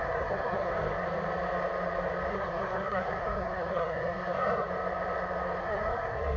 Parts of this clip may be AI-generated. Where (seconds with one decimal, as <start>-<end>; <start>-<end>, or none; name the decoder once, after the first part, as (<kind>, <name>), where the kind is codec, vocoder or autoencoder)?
0.0-0.7 (codec, SNAC); 2.3-4.7; 5.6-6.4